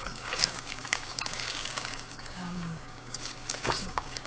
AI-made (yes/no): yes